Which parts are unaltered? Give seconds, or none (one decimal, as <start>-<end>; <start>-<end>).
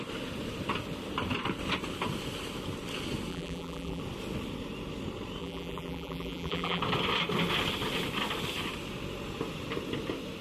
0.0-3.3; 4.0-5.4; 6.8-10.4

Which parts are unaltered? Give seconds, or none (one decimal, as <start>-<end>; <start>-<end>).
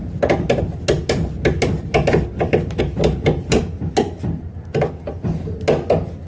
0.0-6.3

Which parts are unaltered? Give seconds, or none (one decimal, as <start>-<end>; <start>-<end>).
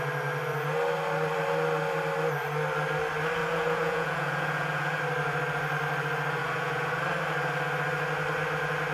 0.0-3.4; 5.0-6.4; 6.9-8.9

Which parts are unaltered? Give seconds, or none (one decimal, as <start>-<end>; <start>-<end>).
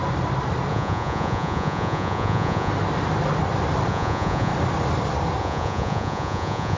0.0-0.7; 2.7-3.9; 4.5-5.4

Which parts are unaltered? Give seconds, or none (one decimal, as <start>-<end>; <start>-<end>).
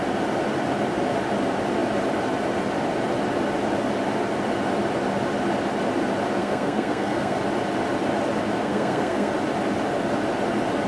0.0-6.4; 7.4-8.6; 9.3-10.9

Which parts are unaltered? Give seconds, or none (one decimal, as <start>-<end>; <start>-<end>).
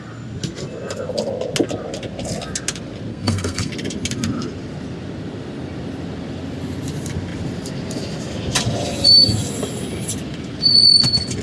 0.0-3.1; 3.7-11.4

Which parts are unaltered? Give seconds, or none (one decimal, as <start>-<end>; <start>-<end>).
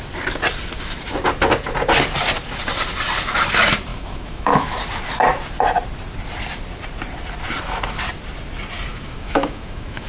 0.0-3.9; 4.8-8.9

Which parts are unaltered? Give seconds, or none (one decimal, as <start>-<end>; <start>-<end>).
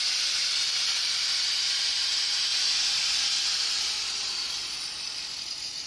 2.5-3.4